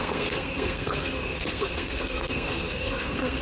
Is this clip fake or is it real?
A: fake